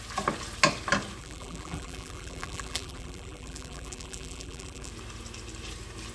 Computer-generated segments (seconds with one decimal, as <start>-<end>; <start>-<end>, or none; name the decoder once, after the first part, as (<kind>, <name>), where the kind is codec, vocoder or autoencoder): 1.2-4.9 (vocoder, BigVGAN v2)